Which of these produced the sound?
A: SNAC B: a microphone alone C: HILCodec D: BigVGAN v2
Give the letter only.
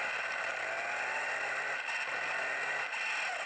B